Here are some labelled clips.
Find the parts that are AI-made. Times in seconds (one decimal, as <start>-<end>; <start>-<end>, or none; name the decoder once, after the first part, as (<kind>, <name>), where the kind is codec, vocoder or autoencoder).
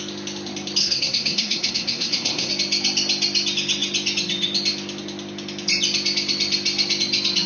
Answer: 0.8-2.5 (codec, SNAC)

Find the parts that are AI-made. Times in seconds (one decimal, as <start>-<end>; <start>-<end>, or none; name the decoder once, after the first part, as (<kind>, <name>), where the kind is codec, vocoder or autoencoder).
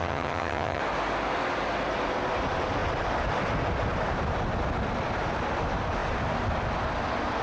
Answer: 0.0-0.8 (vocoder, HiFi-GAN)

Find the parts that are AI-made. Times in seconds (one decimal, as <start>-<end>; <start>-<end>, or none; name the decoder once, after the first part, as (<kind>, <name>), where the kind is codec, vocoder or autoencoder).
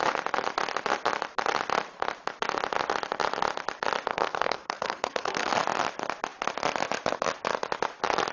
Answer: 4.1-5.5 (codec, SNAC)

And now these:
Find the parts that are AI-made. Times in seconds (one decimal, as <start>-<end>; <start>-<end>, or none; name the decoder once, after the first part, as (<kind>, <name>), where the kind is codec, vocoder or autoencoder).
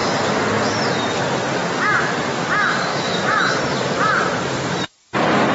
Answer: 2.9-3.6 (autoencoder, DAC-VAE)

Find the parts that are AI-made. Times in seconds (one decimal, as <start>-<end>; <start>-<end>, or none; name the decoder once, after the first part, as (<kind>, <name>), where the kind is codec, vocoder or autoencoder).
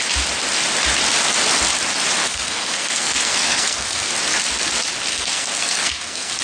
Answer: 2.2-4.1 (codec, SNAC); 5.1-6.4